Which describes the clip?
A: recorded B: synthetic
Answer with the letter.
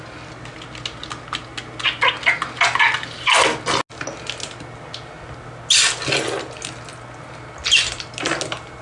A